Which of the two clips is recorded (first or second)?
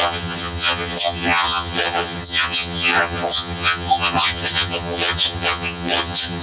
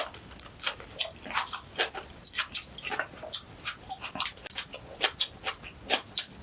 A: second